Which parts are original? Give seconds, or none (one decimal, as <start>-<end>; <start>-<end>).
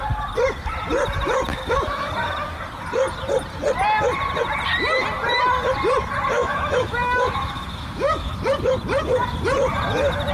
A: 0.0-1.5; 2.1-6.4; 8.4-10.3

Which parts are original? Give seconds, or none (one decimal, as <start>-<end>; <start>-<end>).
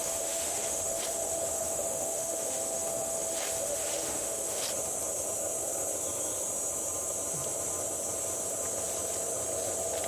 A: 4.6-10.1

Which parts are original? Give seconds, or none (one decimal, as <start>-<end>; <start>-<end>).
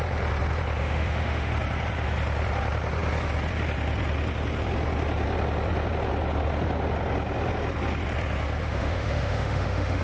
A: 0.0-0.8; 1.5-8.6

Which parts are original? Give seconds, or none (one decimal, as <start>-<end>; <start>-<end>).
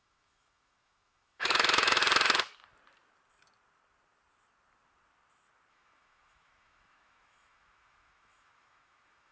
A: 2.0-5.7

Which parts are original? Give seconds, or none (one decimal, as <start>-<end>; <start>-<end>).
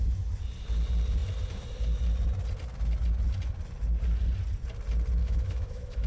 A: 0.0-5.2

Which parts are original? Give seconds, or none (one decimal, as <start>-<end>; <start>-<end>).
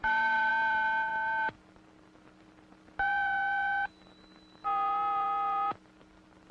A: 0.5-6.5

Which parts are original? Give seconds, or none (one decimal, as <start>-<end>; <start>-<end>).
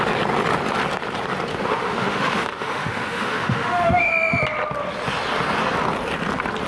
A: 0.0-1.5; 4.1-6.7